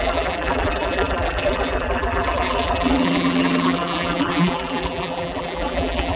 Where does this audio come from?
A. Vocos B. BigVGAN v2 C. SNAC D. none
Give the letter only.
B